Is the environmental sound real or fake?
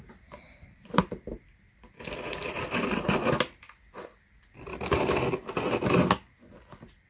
real